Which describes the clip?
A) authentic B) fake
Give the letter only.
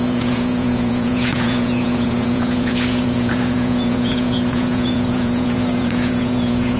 B